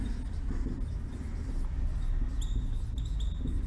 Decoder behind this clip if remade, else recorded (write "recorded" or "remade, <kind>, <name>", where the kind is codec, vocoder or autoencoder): recorded